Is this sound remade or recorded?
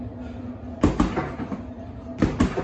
recorded